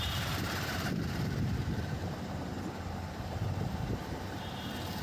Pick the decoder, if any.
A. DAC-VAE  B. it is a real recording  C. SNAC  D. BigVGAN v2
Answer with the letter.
D